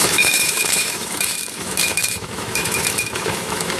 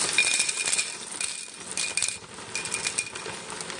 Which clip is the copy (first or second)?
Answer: first